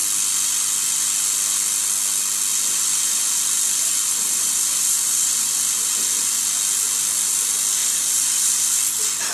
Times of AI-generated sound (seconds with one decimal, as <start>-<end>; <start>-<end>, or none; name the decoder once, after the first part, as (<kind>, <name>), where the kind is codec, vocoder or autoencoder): 2.5-6.4 (vocoder, BigVGAN v2); 7.8-8.8